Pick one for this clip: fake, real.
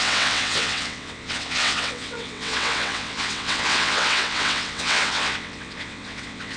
fake